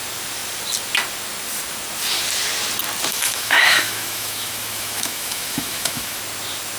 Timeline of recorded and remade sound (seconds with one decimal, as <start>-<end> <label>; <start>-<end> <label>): 0.0-3.1 recorded; 3.1-6.2 remade; 6.2-6.8 recorded